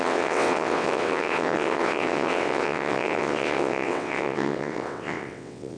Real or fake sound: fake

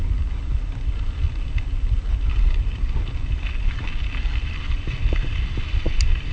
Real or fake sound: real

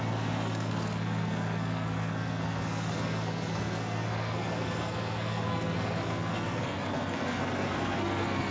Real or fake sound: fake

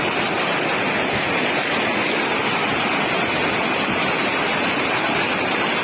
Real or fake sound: real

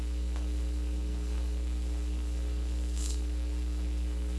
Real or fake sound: fake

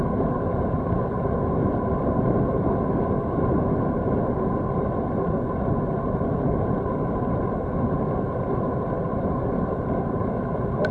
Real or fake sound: real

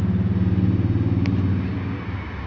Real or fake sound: real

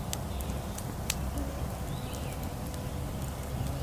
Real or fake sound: real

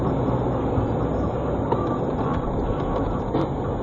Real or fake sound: real